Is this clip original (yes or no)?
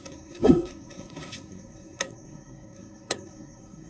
no